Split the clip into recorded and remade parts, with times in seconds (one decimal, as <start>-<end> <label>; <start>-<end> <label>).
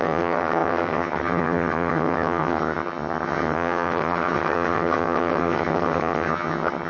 0.0-6.9 remade